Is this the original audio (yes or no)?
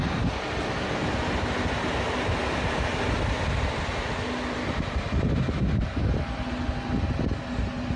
yes